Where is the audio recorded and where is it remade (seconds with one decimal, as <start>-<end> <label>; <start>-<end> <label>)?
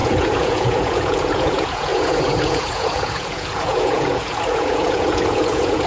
0.0-5.9 remade